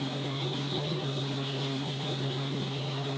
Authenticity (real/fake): fake